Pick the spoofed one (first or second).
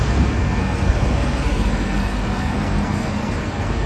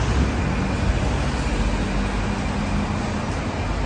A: first